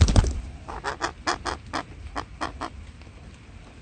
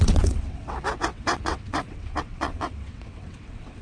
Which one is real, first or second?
first